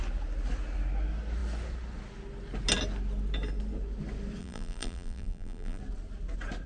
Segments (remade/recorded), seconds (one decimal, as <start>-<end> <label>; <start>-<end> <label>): 0.0-4.4 recorded; 4.4-5.8 remade; 5.8-6.7 recorded